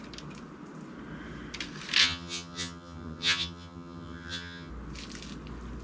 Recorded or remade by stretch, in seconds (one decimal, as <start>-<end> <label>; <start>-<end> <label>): 0.0-2.0 recorded; 2.0-4.7 remade; 4.7-5.8 recorded